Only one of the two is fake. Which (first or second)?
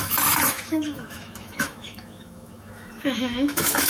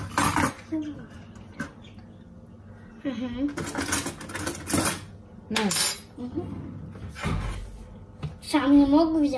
first